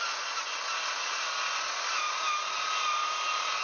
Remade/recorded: recorded